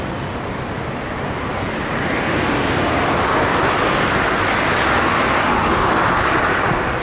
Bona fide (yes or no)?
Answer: yes